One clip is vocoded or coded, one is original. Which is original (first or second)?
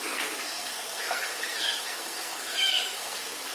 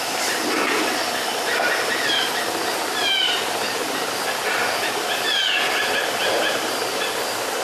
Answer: second